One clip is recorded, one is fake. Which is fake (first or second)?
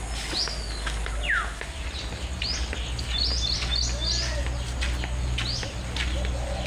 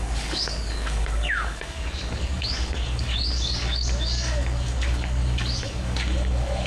second